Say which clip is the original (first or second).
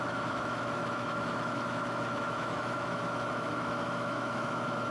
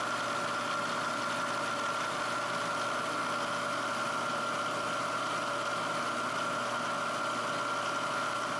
second